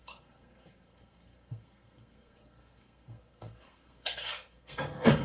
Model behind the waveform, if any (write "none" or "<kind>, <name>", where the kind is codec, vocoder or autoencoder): codec, SNAC